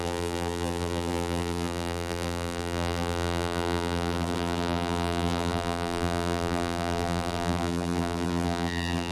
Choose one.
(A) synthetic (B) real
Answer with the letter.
A